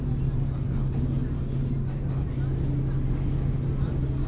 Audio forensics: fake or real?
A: real